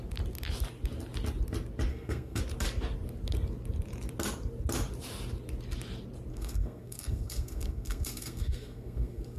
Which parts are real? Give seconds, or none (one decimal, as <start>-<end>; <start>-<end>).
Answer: 0.0-1.9; 2.4-6.3